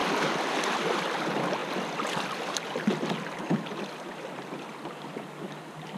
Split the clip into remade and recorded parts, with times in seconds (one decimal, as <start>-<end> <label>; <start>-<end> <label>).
0.0-6.0 recorded